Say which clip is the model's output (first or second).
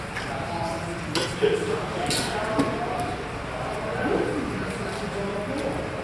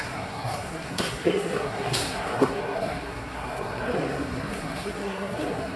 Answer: second